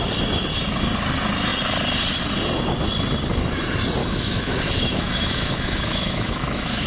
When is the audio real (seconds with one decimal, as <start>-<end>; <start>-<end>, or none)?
0.0-4.0